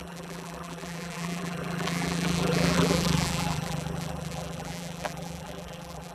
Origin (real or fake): fake